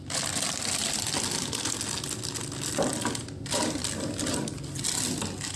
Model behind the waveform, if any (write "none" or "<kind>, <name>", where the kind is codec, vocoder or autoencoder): none